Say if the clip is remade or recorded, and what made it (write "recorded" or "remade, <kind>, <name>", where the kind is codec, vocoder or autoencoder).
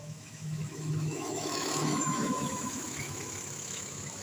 remade, autoencoder, DAC-VAE